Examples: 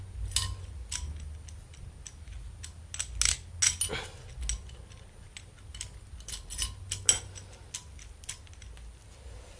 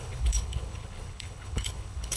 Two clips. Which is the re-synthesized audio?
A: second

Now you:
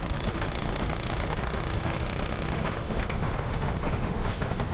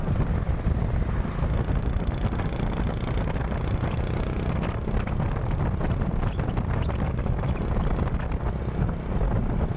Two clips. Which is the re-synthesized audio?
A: first